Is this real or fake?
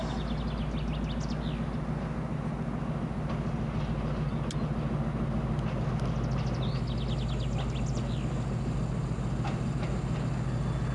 real